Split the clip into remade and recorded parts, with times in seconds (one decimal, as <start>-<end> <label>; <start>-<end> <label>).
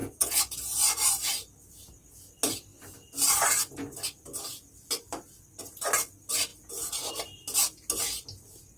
0.0-0.8 remade; 0.8-6.5 recorded; 6.5-7.1 remade; 7.1-8.8 recorded